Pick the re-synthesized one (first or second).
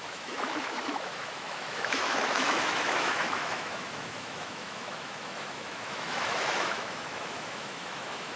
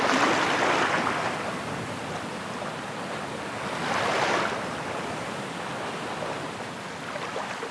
first